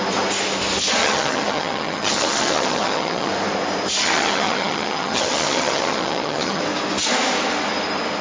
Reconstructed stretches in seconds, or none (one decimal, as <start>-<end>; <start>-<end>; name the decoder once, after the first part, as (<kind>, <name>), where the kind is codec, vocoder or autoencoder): 1.0-3.3 (vocoder, HiFi-GAN); 4.0-6.6

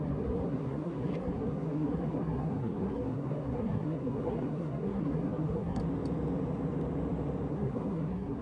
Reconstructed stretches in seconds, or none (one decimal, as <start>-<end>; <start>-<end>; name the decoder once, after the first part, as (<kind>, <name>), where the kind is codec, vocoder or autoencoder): 0.0-5.8 (codec, SNAC); 7.5-8.4